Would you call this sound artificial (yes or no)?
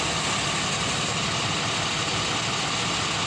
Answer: no